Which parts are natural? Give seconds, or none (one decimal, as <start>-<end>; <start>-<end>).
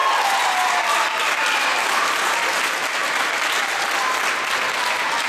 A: 2.6-3.0; 3.6-5.3